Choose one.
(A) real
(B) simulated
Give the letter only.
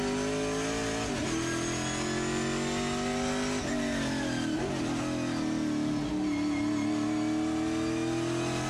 A